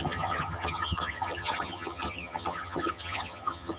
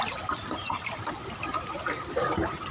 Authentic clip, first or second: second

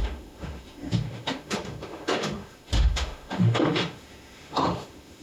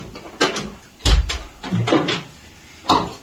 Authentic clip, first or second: second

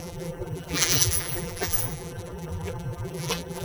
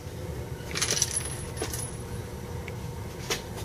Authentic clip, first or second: second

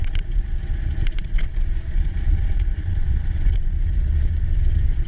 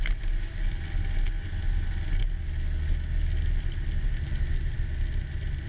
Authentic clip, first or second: second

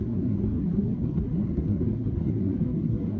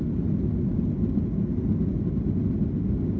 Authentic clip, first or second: second